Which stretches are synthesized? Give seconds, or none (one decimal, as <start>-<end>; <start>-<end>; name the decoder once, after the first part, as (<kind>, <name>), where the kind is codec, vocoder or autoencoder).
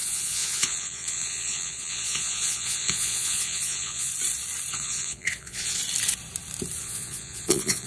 0.0-4.1 (vocoder, Vocos); 4.7-5.8; 6.8-7.9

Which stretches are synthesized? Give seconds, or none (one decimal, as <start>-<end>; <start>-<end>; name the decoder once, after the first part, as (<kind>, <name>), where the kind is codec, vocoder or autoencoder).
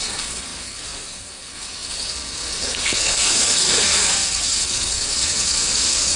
0.0-6.2 (codec, SNAC)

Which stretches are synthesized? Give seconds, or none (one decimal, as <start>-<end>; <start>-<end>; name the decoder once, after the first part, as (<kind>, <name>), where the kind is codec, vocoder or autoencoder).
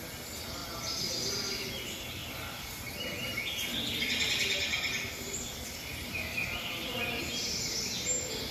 none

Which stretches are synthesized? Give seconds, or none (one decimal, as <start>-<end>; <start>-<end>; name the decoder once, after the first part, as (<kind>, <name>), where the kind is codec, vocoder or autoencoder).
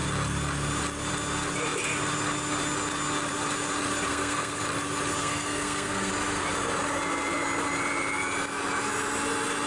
4.1-4.6 (codec, SNAC); 5.2-6.1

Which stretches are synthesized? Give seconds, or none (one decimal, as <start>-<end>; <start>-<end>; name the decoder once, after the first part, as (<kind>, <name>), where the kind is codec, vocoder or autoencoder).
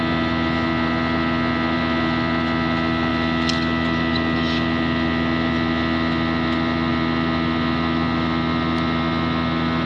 none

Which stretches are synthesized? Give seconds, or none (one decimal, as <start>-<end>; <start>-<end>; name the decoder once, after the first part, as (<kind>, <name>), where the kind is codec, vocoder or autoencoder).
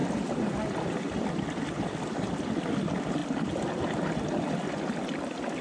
none